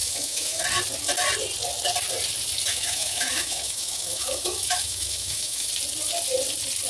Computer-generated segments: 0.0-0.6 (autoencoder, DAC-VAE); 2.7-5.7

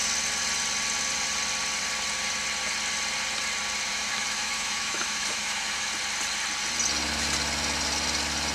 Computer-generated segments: 3.9-5.9 (autoencoder, DAC-VAE)